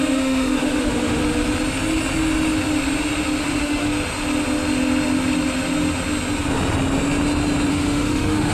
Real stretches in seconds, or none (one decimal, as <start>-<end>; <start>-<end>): 1.2-3.4; 3.9-7.7